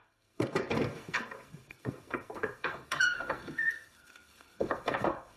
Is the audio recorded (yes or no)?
no